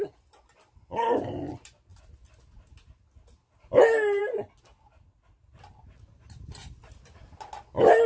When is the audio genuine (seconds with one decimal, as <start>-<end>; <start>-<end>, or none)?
0.0-8.1